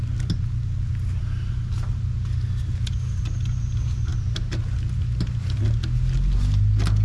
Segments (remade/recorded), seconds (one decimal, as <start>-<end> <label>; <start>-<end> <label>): 0.0-7.0 recorded